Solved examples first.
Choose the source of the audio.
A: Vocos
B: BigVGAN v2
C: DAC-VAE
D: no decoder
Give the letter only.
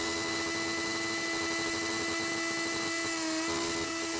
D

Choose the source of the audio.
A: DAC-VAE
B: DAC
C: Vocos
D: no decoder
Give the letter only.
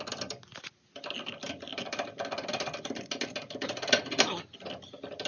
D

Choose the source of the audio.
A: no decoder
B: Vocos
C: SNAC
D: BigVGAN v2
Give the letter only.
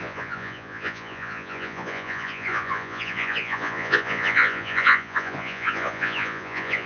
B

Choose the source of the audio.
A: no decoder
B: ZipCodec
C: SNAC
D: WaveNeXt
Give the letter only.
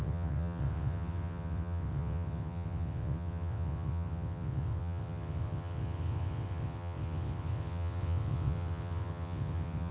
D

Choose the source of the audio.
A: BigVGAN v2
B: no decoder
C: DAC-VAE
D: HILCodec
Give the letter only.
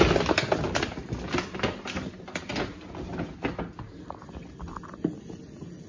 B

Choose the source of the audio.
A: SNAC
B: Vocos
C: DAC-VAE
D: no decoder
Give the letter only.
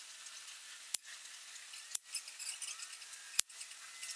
D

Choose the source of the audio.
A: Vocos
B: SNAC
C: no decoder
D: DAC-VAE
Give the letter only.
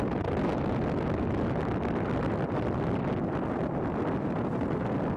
C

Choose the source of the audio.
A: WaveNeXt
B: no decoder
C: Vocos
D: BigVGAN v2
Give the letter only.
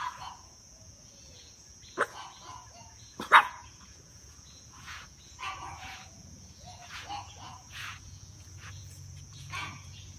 C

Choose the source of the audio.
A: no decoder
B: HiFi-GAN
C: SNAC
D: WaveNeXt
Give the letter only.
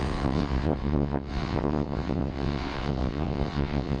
D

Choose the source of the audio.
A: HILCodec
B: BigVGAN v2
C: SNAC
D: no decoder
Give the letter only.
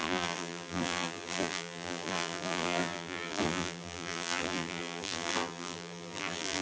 B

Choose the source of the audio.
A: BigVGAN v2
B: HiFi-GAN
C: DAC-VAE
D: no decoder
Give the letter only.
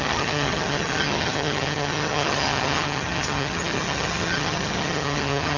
B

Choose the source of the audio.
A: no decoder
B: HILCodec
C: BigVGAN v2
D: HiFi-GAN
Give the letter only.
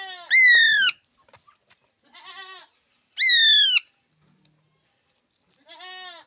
A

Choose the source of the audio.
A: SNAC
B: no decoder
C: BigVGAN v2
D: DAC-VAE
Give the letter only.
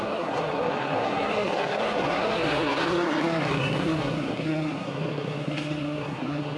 A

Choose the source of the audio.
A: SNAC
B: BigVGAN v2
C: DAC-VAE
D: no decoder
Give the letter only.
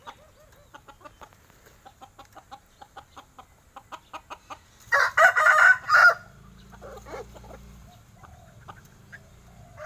D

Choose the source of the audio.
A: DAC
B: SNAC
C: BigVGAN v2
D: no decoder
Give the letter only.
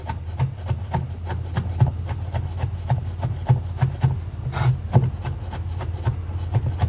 D